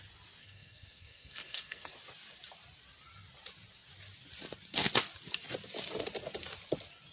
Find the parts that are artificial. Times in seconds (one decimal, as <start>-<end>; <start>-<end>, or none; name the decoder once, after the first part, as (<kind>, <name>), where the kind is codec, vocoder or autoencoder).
0.4-1.9 (codec, SNAC)